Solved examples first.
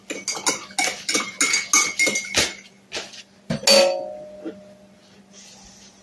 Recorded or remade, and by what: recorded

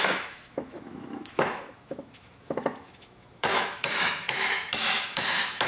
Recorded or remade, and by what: remade, autoencoder, DAC-VAE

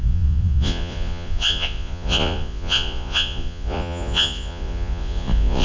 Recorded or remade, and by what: remade, vocoder, Vocos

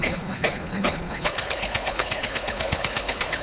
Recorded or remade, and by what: remade, codec, HILCodec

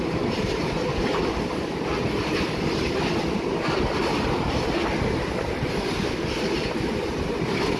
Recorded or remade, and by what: recorded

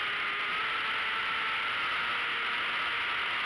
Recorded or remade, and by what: recorded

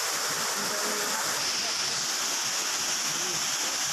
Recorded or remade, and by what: recorded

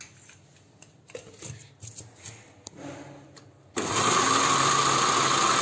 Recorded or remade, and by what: recorded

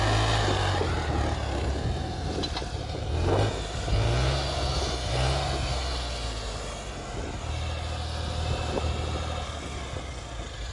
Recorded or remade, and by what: recorded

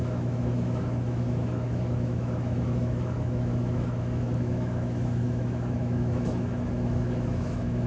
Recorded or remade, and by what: remade, autoencoder, DAC-VAE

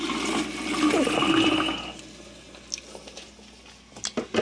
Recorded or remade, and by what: recorded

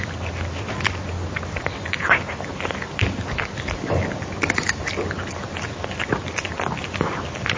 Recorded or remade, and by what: recorded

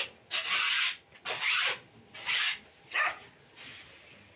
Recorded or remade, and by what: recorded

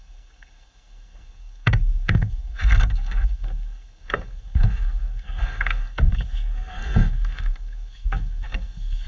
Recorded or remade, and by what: remade, codec, SNAC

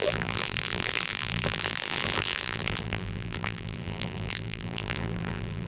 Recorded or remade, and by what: remade, vocoder, BigVGAN v2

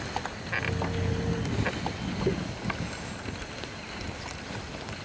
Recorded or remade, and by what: recorded